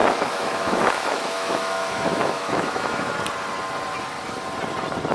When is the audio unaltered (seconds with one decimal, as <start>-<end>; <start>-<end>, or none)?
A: 3.1-5.1